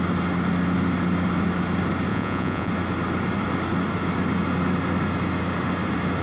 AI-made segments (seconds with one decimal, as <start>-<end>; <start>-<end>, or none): 2.1-2.7